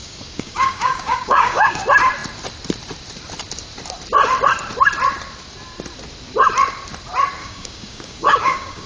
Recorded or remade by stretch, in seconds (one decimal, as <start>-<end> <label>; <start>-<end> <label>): 0.0-1.8 remade; 1.8-7.4 recorded; 7.4-8.9 remade